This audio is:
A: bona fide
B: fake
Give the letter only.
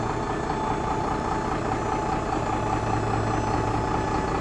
A